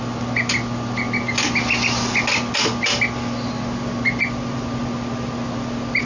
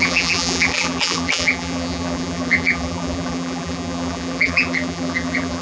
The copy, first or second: second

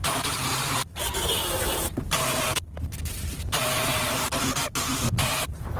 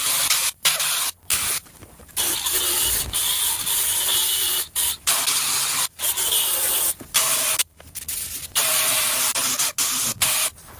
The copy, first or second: first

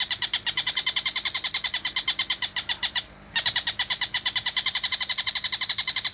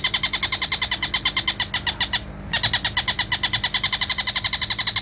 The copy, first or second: first